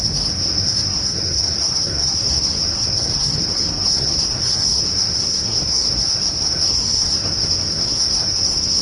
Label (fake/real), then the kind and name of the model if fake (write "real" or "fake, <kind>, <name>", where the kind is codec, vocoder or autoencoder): fake, codec, SNAC